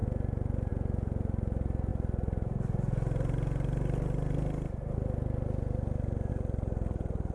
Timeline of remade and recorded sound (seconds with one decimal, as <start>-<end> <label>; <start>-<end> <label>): 0.0-7.3 recorded